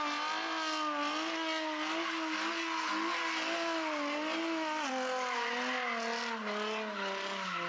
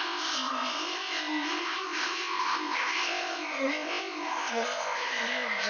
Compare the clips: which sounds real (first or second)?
first